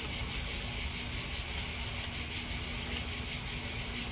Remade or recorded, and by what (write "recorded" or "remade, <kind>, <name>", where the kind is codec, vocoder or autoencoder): recorded